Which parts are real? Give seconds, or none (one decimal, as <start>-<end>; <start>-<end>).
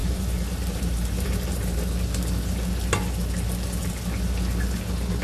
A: 1.9-5.2